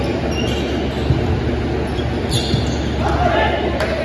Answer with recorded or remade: recorded